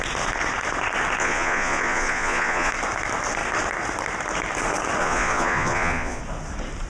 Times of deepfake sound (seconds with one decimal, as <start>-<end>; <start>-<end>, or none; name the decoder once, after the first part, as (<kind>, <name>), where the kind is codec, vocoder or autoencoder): 1.2-2.7 (vocoder, Vocos); 5.0-6.2